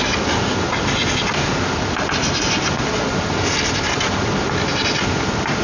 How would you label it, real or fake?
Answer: real